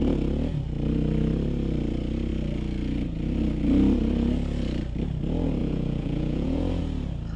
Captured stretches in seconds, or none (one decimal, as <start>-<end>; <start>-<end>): 0.0-5.6; 6.8-7.4